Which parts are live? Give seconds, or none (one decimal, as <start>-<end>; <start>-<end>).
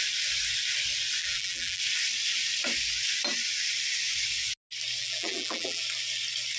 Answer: 0.0-1.2; 1.8-5.0; 5.8-6.6